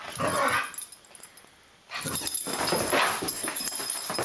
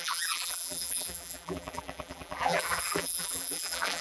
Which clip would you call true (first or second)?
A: first